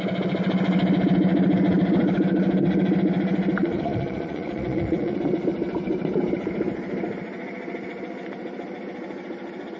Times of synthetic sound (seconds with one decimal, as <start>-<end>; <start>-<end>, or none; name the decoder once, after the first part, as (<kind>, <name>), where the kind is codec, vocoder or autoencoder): 3.6-5.2 (vocoder, Vocos)